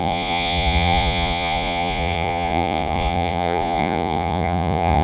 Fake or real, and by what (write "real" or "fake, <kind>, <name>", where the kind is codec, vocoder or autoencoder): fake, vocoder, Vocos